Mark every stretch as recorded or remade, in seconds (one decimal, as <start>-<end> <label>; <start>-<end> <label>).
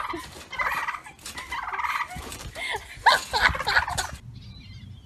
0.0-5.1 recorded